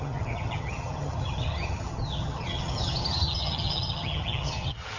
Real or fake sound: fake